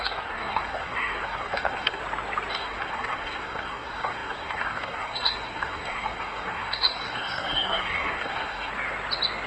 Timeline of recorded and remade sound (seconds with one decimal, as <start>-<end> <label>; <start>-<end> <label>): 0.0-2.0 remade; 2.0-2.5 recorded; 2.5-8.7 remade; 8.7-9.5 recorded